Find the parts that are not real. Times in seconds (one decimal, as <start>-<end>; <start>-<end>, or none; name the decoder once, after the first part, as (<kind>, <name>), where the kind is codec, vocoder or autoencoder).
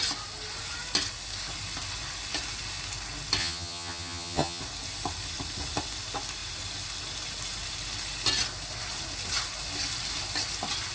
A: 3.4-4.6 (vocoder, HiFi-GAN)